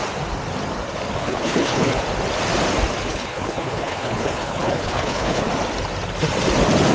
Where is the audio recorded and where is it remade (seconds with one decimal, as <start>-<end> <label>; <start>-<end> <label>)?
0.0-1.2 recorded; 1.2-2.0 remade; 2.0-3.1 recorded; 3.1-5.5 remade; 5.5-6.9 recorded